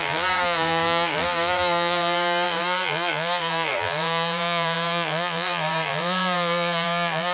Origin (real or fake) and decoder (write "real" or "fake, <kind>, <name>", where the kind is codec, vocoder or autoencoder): fake, vocoder, BigVGAN v2